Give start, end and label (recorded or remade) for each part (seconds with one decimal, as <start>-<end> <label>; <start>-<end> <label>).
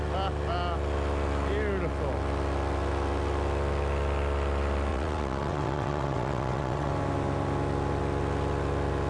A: 0.0-4.9 recorded; 4.9-6.9 remade; 6.9-9.1 recorded